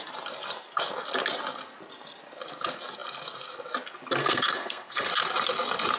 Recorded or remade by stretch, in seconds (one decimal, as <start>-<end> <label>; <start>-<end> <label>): 0.0-4.2 recorded; 4.2-5.1 remade; 5.1-6.0 recorded